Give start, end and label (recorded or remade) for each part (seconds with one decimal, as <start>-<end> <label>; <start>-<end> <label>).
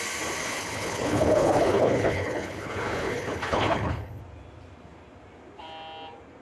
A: 0.0-0.4 recorded; 0.4-4.2 remade; 4.2-6.4 recorded